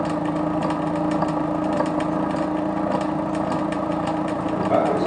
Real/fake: real